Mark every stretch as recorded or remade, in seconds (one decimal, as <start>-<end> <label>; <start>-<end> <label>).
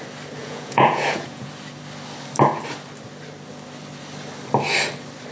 0.0-0.4 recorded; 0.4-1.5 remade; 1.5-5.3 recorded